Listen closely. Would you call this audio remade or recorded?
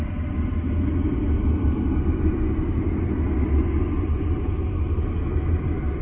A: recorded